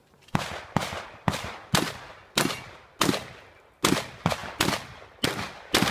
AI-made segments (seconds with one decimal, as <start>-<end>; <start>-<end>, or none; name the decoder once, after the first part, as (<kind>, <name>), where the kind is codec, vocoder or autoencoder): 0.0-1.7 (vocoder, BigVGAN v2)